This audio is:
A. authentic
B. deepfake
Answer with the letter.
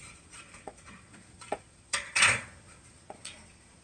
B